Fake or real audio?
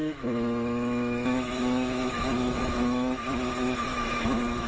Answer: fake